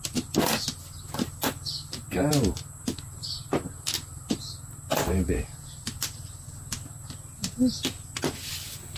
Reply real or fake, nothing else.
real